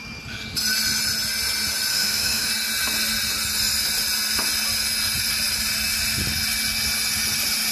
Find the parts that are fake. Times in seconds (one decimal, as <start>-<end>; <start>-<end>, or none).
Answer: 1.9-2.5